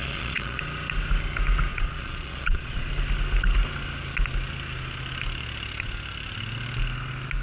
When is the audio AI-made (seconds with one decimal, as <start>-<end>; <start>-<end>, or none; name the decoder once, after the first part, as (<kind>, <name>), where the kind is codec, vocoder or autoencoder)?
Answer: 0.0-0.6 (vocoder, Vocos); 1.7-2.9